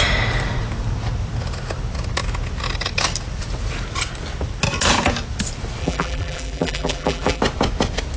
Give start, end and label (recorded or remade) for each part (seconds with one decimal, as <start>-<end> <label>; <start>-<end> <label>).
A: 0.0-5.8 recorded; 5.8-7.4 remade; 7.4-8.2 recorded